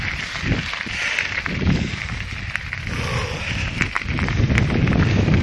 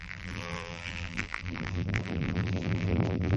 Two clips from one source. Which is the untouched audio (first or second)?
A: first